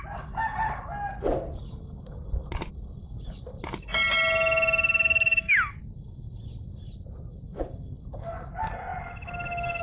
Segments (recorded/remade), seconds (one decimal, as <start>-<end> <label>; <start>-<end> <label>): 0.0-9.8 recorded